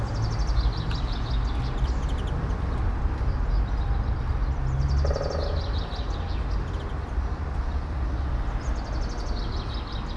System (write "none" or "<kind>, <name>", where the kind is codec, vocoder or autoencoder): none